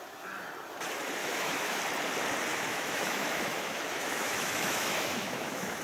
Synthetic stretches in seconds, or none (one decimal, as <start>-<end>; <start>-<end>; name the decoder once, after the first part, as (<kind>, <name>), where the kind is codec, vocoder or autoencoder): 1.2-1.8 (autoencoder, DAC-VAE); 2.5-5.8